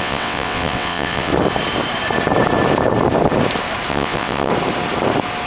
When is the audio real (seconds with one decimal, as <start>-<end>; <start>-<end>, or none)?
1.3-3.9; 4.5-5.5